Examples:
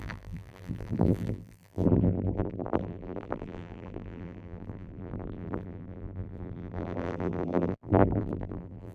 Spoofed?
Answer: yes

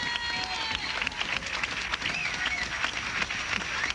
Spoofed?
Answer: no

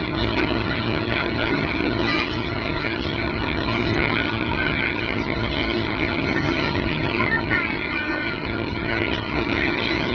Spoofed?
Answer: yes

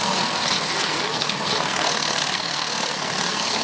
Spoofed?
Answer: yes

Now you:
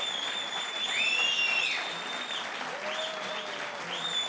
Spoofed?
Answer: no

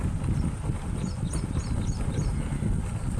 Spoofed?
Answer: no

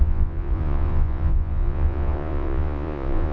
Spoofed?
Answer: yes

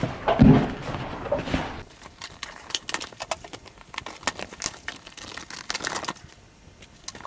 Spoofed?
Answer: no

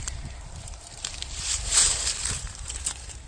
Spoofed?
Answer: yes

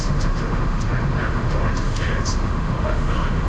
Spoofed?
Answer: yes